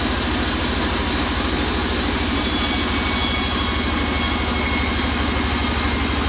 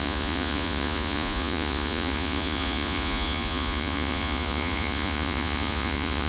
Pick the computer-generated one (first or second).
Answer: second